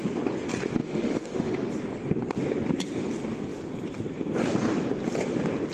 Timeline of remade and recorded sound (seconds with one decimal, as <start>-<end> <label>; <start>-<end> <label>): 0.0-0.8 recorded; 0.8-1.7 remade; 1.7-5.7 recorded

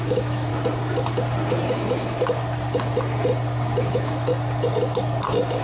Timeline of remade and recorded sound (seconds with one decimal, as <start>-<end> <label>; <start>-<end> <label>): 0.0-0.5 remade; 0.5-3.9 recorded; 3.9-4.3 remade; 4.3-5.6 recorded

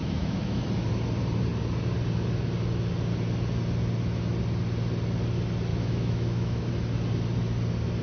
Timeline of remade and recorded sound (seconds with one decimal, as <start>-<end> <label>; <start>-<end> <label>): 0.0-0.6 remade; 0.6-5.7 recorded; 5.7-6.7 remade; 6.7-8.0 recorded

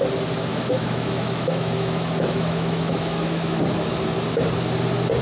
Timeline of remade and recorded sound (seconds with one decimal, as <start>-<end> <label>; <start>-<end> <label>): 0.0-0.5 recorded; 0.5-3.6 remade; 3.6-5.2 recorded

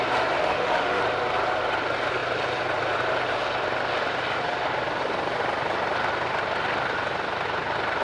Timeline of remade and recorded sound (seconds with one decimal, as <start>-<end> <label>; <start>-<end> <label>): 0.0-0.4 recorded; 0.4-1.0 remade; 1.0-8.0 recorded

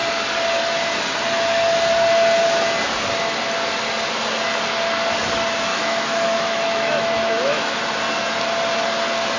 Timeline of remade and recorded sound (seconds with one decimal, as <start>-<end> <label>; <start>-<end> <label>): 0.0-5.7 recorded; 5.7-7.8 remade; 7.8-9.4 recorded